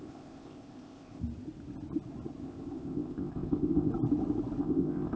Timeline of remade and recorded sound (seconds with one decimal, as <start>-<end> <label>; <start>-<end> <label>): 0.0-1.2 remade; 1.2-2.4 recorded; 2.4-3.9 remade; 3.9-4.6 recorded; 4.6-5.2 remade